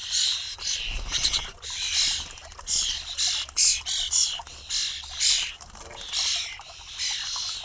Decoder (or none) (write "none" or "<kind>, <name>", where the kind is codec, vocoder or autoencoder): none